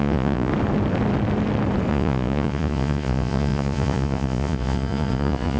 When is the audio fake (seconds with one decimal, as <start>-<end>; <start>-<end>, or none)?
0.0-0.5; 1.9-5.6